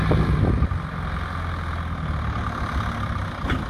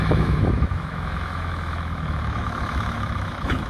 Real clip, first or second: first